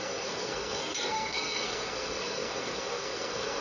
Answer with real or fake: fake